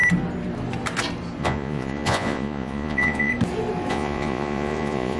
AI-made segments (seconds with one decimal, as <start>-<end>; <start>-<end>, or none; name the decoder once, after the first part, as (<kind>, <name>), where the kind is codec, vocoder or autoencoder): 1.4-3.3 (vocoder, Vocos); 3.9-5.2